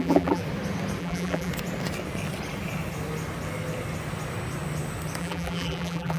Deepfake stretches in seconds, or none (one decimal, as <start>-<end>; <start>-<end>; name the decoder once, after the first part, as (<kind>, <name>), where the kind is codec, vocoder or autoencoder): 0.0-0.4 (vocoder, BigVGAN v2); 1.0-1.5; 5.2-6.2